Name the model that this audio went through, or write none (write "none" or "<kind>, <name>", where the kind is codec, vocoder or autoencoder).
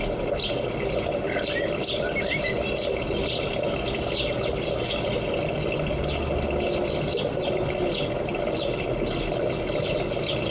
none